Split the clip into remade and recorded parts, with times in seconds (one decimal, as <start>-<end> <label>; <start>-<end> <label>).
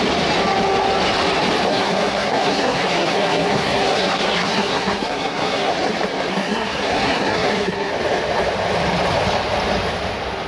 0.0-1.7 recorded; 1.7-5.7 remade; 5.7-6.3 recorded; 6.3-7.9 remade; 7.9-10.5 recorded